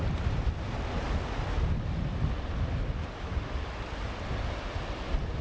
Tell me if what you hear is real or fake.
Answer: real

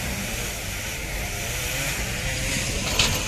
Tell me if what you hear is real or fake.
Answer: real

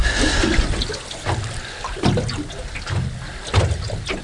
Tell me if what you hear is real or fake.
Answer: real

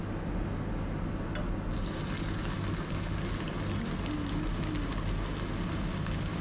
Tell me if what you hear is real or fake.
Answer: real